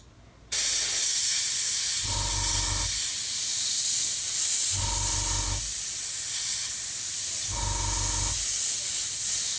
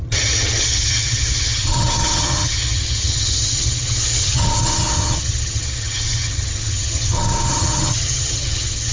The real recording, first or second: first